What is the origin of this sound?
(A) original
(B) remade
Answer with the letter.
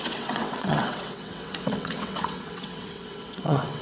B